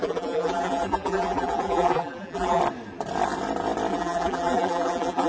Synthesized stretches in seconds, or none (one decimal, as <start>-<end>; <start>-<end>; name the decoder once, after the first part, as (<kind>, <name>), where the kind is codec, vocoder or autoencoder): 0.0-2.6 (vocoder, BigVGAN v2); 3.9-5.3